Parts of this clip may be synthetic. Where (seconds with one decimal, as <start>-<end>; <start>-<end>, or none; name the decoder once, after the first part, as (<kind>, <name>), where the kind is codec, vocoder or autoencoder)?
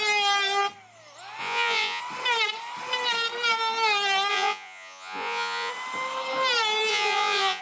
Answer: 1.4-2.0 (vocoder, Vocos); 4.3-5.7; 6.9-7.6